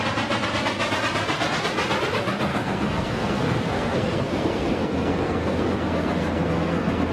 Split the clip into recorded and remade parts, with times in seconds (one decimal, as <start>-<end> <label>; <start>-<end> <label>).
0.0-2.5 recorded; 2.5-7.1 remade